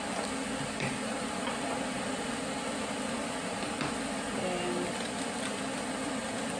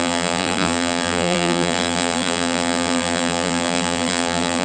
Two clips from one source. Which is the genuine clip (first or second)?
first